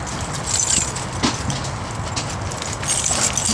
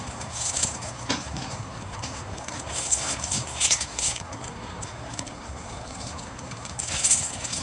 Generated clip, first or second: second